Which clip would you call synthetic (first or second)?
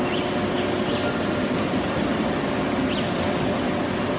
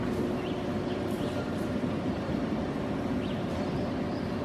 second